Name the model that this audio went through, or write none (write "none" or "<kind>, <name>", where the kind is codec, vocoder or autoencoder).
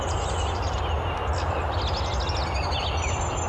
none